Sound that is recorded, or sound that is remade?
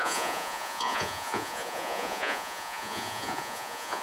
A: remade